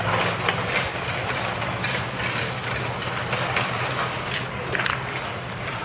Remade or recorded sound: recorded